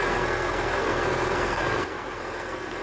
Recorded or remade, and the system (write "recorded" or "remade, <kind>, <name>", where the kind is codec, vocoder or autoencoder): remade, codec, SNAC